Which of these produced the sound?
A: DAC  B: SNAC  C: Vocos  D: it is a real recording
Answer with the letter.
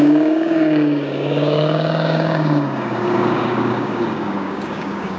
A